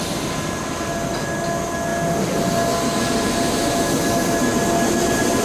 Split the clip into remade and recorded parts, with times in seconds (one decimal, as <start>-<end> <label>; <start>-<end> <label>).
0.0-5.4 recorded

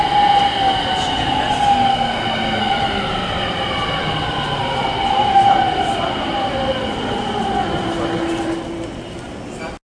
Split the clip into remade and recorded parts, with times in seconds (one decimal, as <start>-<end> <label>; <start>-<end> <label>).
0.0-1.9 recorded; 1.9-2.7 remade; 2.7-9.8 recorded

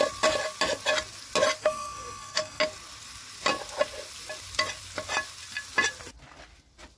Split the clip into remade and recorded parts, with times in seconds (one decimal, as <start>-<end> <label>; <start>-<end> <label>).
0.0-1.6 recorded; 1.6-2.6 remade; 2.6-7.0 recorded